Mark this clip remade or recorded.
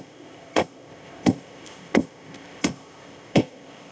remade